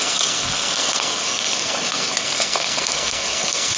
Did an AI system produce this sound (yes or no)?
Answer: yes